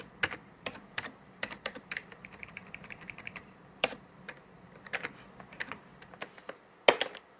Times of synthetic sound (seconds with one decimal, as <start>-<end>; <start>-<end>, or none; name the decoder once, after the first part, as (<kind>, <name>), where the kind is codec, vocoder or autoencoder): 0.4-4.8 (vocoder, BigVGAN v2); 5.9-6.7